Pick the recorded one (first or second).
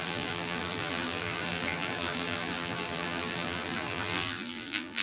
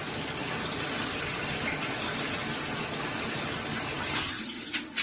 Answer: second